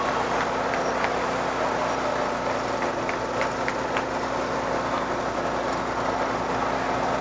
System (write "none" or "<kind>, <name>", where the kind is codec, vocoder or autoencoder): none